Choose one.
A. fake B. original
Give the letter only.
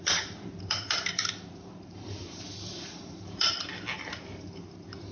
A